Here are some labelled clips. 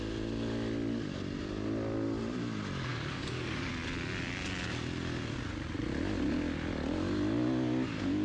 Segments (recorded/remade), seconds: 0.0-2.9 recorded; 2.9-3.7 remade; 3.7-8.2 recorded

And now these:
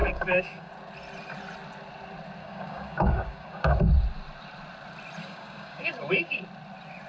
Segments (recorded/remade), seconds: 0.0-0.7 remade; 0.7-2.4 recorded; 2.4-3.8 remade; 3.8-5.2 recorded; 5.2-6.4 remade; 6.4-7.1 recorded